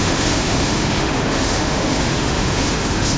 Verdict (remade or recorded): remade